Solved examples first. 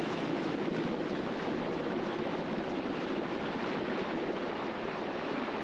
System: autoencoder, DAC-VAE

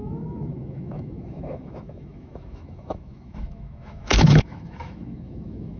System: autoencoder, DAC-VAE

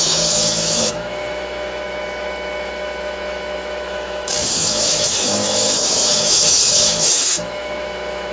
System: autoencoder, DAC-VAE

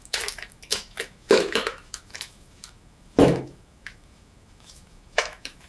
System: autoencoder, DAC-VAE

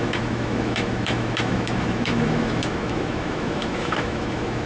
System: autoencoder, DAC-VAE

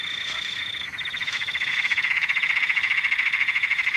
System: autoencoder, DAC-VAE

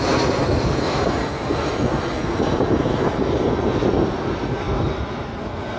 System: none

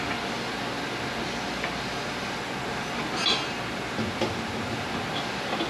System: none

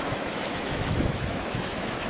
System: autoencoder, DAC-VAE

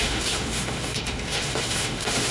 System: autoencoder, DAC-VAE